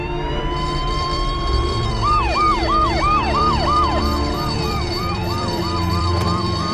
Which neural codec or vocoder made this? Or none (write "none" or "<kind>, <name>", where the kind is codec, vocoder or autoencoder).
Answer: vocoder, BigVGAN v2